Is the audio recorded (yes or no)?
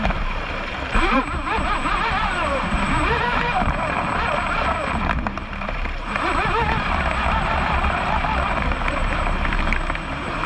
no